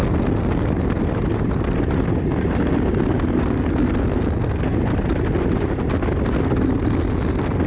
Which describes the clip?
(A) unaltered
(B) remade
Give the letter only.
A